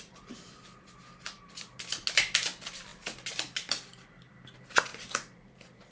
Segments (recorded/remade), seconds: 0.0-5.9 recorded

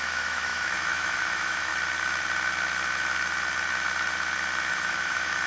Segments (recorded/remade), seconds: 0.0-1.7 remade; 1.7-4.7 recorded; 4.7-5.5 remade

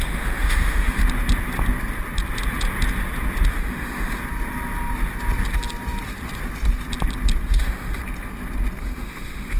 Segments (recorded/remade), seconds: 0.0-1.0 remade; 1.0-3.5 recorded; 3.5-4.2 remade; 4.2-7.5 recorded; 7.5-8.0 remade; 8.0-8.8 recorded; 8.8-9.6 remade

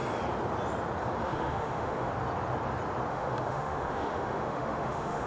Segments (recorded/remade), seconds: 0.0-1.2 recorded; 1.2-2.1 remade; 2.1-3.1 recorded; 3.1-5.3 remade